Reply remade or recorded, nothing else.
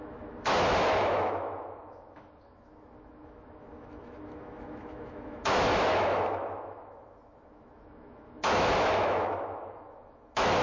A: remade